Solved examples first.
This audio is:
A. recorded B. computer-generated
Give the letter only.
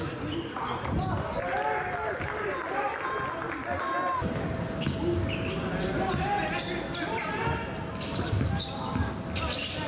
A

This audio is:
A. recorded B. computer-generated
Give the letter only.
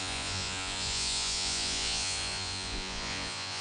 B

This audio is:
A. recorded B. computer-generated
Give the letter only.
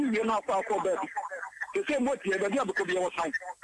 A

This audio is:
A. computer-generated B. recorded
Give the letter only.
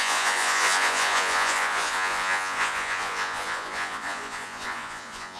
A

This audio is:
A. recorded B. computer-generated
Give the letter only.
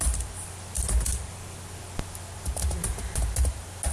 A